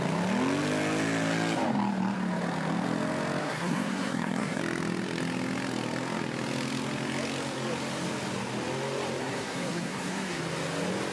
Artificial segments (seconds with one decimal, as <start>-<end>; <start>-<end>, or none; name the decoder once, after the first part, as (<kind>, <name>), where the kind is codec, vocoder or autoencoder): 3.4-4.6 (codec, SNAC); 9.2-10.4